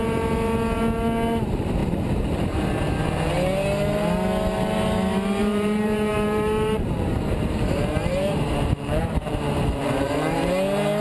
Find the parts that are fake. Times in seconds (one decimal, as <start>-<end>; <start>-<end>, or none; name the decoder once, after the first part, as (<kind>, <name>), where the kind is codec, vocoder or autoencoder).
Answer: 1.8-2.7 (vocoder, BigVGAN v2); 5.4-10.4